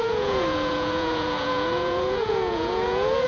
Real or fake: fake